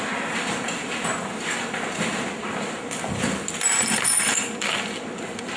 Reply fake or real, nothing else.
real